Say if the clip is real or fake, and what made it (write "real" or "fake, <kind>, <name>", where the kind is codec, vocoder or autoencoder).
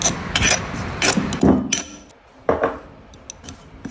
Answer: real